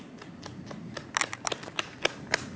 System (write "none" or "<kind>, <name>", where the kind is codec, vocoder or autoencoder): none